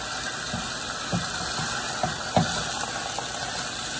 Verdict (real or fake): real